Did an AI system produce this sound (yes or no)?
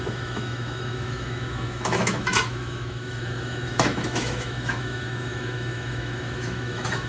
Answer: yes